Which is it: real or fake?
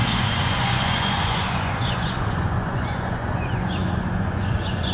fake